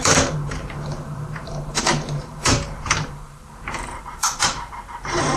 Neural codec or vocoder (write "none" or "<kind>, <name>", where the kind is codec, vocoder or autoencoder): vocoder, BigVGAN v2